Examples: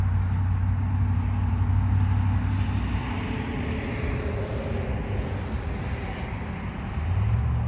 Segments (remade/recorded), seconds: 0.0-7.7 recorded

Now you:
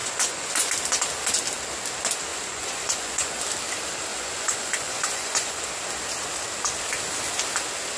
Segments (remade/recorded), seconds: 0.0-0.7 remade; 0.7-2.3 recorded; 2.3-3.4 remade; 3.4-4.1 recorded; 4.1-5.6 remade; 5.6-8.0 recorded